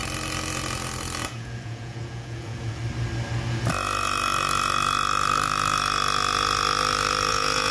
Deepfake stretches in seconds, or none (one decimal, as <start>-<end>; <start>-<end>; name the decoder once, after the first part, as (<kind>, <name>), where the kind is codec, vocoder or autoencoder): 1.3-2.8 (vocoder, Vocos); 7.3-7.7